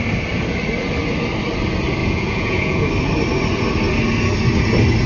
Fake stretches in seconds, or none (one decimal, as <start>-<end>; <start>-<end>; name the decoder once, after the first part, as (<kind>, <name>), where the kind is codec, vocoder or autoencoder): 2.0-2.9 (vocoder, Vocos)

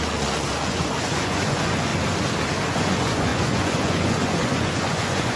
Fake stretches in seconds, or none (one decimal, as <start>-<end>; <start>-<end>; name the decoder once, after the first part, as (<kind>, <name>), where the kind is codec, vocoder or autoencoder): 0.0-1.9 (vocoder, Vocos); 2.7-5.4

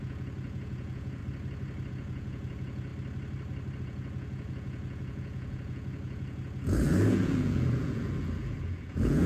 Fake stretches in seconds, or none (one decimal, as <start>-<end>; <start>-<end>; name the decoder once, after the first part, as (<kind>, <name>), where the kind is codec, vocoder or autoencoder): 0.0-1.2 (vocoder, Vocos); 1.9-2.9; 3.8-9.3

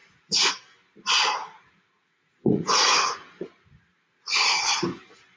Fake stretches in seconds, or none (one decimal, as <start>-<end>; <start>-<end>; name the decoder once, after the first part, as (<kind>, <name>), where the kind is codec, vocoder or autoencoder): 0.0-0.5 (vocoder, Vocos); 1.4-4.4

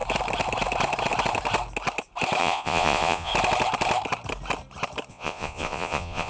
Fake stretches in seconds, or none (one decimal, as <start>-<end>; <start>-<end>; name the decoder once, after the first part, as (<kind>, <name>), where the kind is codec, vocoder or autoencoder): 2.4-3.3 (vocoder, Vocos); 5.1-6.3

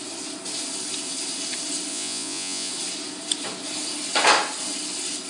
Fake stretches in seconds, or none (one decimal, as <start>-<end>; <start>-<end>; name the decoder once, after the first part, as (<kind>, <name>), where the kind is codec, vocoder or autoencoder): 1.9-2.7 (vocoder, Vocos)